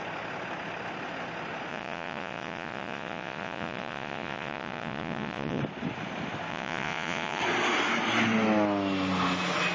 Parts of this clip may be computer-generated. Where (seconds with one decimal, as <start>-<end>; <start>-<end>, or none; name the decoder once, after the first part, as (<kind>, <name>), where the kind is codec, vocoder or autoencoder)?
1.7-5.6 (vocoder, Vocos); 6.5-7.4